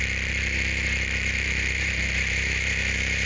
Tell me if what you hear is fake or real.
fake